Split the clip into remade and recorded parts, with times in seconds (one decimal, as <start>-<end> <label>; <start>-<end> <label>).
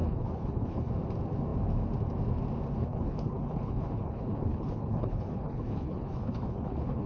0.0-0.9 remade; 0.9-2.8 recorded; 2.8-7.1 remade